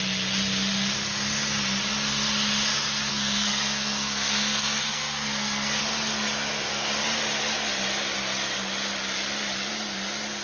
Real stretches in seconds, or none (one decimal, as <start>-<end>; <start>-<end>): 0.0-3.1; 5.8-10.4